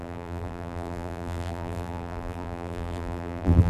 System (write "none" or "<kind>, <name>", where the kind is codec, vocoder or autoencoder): vocoder, BigVGAN v2